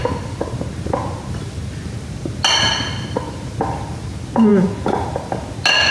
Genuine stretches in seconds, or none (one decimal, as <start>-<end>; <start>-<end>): 0.0-5.9